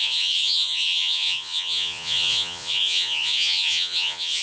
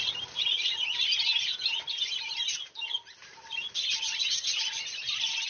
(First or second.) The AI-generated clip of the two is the first